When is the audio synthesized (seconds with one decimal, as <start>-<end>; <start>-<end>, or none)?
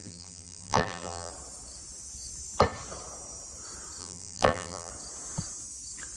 0.0-1.3; 4.0-4.9